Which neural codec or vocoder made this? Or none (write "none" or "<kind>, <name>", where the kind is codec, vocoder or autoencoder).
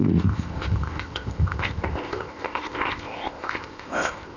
codec, ZipCodec